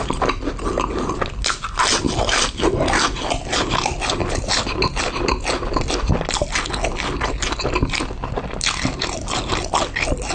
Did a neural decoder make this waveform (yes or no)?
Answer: no